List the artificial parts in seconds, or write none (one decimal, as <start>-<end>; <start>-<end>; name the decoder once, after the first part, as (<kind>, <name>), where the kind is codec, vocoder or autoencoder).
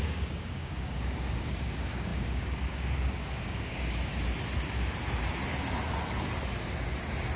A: 0.0-4.1 (codec, DAC)